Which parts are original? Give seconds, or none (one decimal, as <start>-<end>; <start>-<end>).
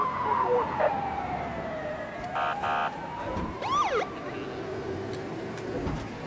0.0-6.3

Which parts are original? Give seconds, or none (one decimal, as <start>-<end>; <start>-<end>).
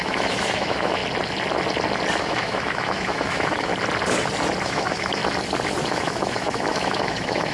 1.0-2.2; 3.7-4.6; 5.2-5.8